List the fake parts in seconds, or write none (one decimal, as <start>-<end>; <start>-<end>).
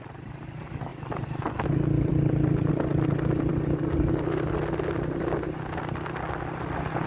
none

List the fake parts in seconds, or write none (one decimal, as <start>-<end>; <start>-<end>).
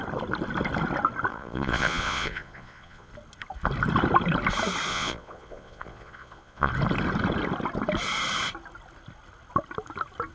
1.3-3.1; 4.9-6.7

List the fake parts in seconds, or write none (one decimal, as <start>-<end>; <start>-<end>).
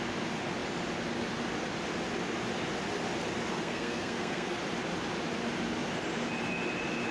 3.5-4.6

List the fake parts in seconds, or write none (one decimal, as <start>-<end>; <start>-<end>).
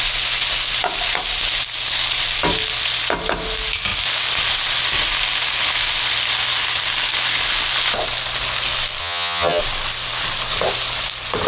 9.0-9.6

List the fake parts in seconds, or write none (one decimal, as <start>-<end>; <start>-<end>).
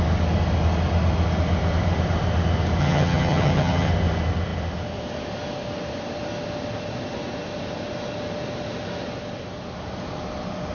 2.8-3.9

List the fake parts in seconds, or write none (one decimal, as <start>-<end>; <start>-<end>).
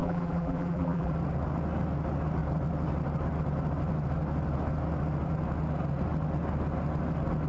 0.0-1.1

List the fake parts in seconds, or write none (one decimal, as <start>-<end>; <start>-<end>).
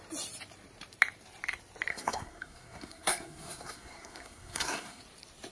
1.9-5.0